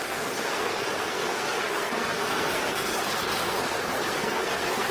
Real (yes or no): no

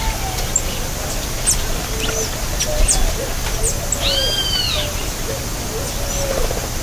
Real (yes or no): yes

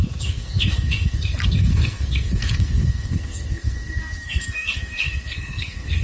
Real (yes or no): no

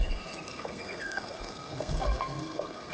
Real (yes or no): no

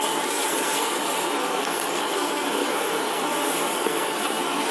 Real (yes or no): no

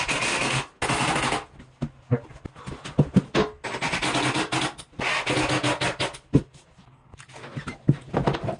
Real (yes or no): yes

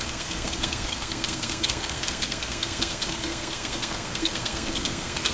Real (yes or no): no